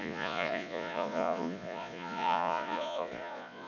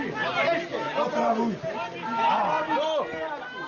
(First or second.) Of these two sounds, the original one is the second